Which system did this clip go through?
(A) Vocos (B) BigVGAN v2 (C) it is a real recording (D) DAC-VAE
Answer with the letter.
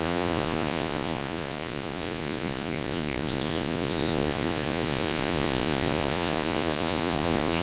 A